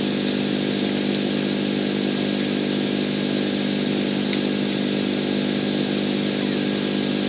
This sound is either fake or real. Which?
real